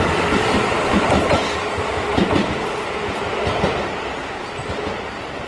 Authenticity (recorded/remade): recorded